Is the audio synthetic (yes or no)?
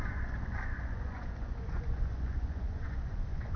yes